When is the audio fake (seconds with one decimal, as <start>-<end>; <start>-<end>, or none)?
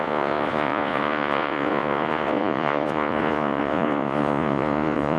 0.0-5.2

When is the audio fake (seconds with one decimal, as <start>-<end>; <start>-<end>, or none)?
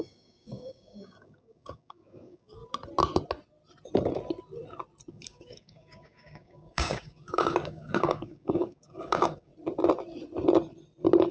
0.0-2.6; 5.1-9.5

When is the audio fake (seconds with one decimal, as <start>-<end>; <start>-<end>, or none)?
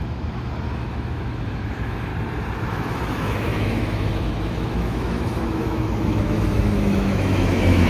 0.0-2.1; 2.7-7.9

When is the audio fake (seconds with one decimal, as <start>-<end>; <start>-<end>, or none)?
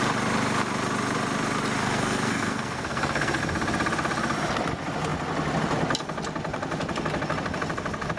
1.8-3.4